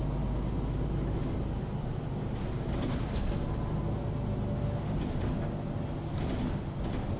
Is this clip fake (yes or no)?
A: no